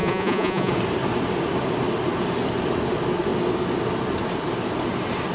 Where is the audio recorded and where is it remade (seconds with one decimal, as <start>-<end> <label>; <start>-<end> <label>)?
0.0-0.7 remade; 0.7-5.3 recorded